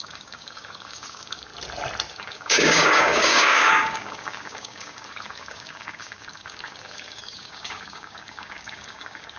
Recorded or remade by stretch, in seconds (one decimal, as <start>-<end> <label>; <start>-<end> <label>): 0.0-1.5 remade; 1.5-2.1 recorded; 2.1-9.4 remade